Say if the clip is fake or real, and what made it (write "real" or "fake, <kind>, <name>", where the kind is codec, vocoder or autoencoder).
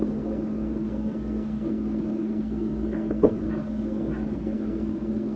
fake, codec, SNAC